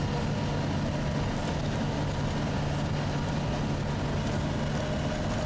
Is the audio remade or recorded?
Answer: recorded